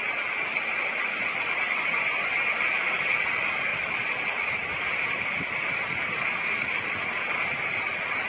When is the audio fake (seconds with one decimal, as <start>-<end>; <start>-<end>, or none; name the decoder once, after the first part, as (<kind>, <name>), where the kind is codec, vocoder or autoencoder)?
1.3-2.4 (vocoder, Vocos)